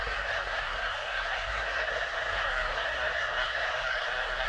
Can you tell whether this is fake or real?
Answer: fake